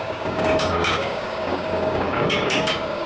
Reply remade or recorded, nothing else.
remade